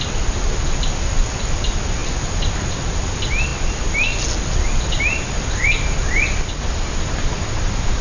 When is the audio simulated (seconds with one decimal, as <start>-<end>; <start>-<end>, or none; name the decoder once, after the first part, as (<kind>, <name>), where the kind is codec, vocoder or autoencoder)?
none